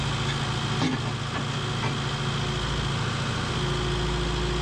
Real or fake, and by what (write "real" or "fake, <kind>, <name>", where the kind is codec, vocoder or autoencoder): real